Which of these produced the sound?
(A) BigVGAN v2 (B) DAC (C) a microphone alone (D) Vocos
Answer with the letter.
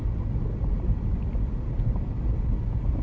C